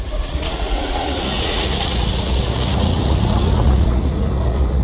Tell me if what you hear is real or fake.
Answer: fake